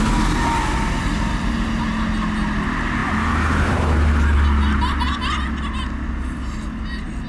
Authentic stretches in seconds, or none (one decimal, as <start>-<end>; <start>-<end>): 0.0-7.3